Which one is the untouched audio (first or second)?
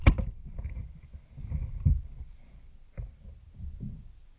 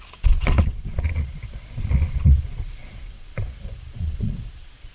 first